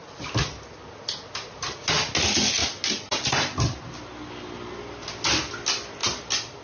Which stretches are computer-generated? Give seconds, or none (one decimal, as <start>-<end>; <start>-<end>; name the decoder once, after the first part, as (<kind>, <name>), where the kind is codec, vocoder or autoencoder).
none